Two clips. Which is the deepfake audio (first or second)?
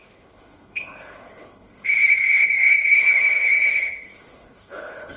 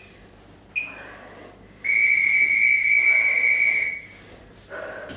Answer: first